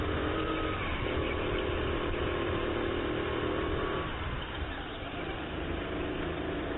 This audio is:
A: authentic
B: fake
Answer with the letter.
B